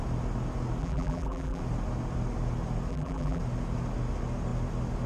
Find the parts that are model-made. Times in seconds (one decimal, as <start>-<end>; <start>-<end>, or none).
0.8-1.6; 2.9-3.4